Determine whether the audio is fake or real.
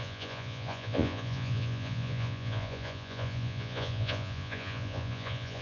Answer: fake